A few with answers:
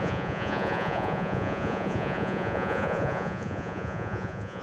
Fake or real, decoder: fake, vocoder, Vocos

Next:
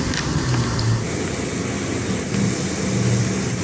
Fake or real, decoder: real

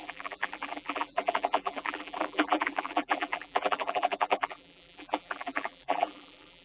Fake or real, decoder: fake, vocoder, BigVGAN v2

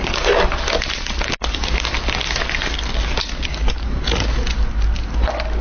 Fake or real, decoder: real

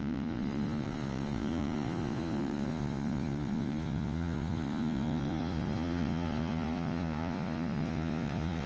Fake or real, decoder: fake, vocoder, Vocos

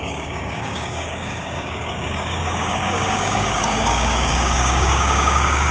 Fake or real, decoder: fake, codec, DAC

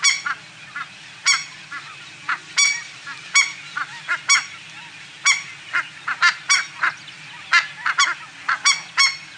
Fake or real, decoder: real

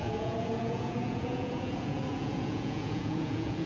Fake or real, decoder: fake, vocoder, Vocos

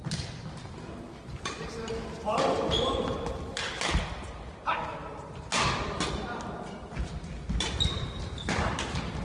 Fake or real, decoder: real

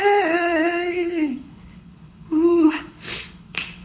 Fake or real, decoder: fake, codec, HILCodec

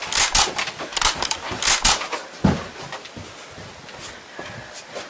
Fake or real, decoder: real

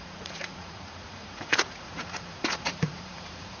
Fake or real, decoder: fake, vocoder, Vocos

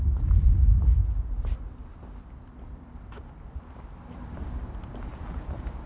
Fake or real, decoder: real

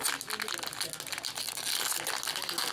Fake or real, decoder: real